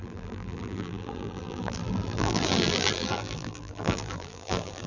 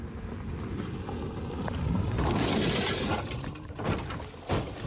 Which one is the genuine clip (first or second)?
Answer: second